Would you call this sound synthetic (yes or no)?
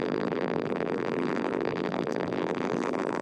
yes